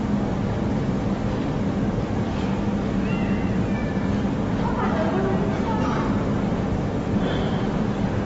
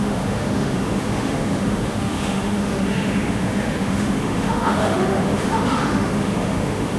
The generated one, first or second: second